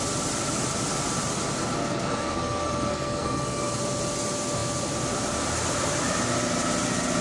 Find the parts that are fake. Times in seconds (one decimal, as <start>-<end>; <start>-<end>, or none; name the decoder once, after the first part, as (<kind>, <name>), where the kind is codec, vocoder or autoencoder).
1.8-3.8 (codec, SNAC)